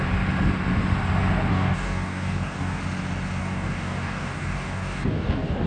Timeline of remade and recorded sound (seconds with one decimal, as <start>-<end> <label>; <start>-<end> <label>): 0.0-1.5 recorded; 1.5-2.8 remade; 2.8-3.4 recorded; 3.4-5.7 remade